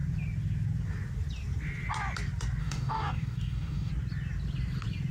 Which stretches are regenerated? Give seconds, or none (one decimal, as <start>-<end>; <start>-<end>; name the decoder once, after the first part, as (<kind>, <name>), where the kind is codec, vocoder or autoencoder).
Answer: 2.6-3.9 (codec, DAC)